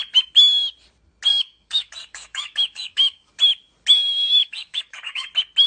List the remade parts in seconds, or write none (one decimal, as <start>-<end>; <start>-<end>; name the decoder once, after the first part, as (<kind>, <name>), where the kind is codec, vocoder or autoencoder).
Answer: 1.3-3.3 (codec, DAC); 4.4-5.3